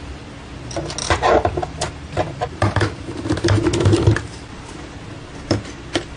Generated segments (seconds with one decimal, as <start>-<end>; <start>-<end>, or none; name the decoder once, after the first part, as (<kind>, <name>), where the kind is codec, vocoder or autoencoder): 1.0-4.7 (vocoder, BigVGAN v2)